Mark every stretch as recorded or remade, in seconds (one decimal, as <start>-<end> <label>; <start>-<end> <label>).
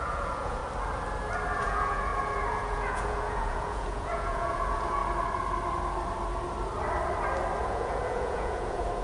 0.0-0.6 remade; 0.6-1.6 recorded; 1.6-5.0 remade; 5.0-7.6 recorded; 7.6-9.0 remade